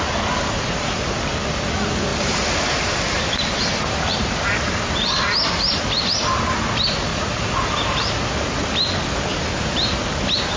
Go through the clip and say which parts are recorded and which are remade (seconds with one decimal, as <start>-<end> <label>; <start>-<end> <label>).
0.0-2.1 recorded; 2.1-5.8 remade; 5.8-9.3 recorded; 9.3-9.9 remade; 9.9-10.6 recorded